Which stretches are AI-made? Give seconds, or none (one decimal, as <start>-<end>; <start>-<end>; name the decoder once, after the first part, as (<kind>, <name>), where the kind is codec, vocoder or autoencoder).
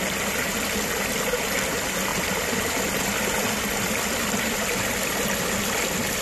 none